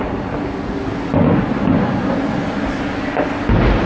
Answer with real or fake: real